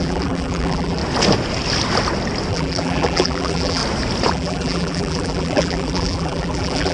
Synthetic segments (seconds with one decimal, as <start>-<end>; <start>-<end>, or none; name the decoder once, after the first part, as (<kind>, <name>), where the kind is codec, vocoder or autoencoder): 0.0-1.0 (vocoder, BigVGAN v2); 2.5-3.8; 4.3-6.9